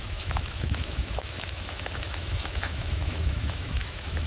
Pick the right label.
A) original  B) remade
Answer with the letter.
B